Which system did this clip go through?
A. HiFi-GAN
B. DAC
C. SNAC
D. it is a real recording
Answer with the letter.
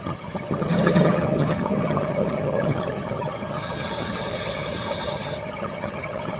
A